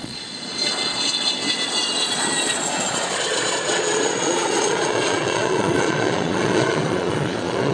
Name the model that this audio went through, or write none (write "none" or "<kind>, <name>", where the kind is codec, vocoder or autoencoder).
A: vocoder, Vocos